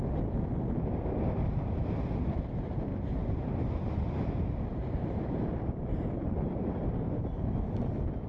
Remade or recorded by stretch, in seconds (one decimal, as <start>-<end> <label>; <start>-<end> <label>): 0.0-2.9 recorded; 2.9-7.9 remade; 7.9-8.3 recorded